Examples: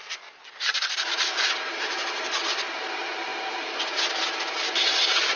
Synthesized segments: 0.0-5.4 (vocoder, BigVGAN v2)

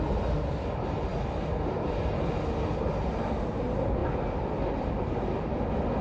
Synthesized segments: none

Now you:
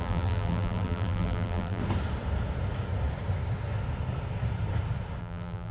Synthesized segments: 0.0-1.8 (vocoder, BigVGAN v2); 5.2-5.7

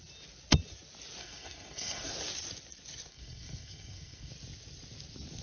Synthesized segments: 1.2-2.1 (codec, SNAC); 3.1-4.3

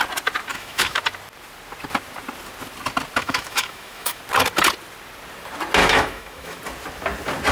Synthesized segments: 0.5-1.0 (autoencoder, DAC-VAE); 3.2-4.2; 5.8-6.6

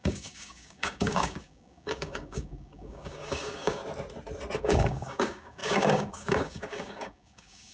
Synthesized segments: 0.0-3.8 (codec, DAC); 4.6-7.7

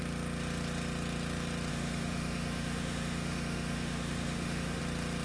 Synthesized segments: 1.7-4.8 (autoencoder, DAC-VAE)